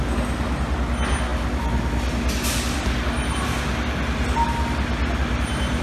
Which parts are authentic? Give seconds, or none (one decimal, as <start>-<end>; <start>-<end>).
0.0-5.8